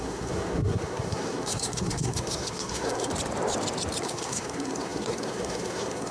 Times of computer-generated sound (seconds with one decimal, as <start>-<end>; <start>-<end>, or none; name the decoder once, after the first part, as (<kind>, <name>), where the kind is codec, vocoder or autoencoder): 0.0-3.1 (codec, SNAC); 4.0-6.1